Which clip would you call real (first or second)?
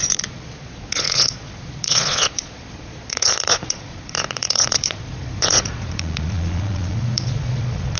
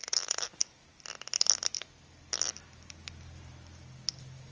second